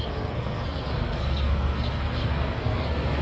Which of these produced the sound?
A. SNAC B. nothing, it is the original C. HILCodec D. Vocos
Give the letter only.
A